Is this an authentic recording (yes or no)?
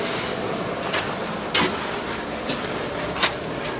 yes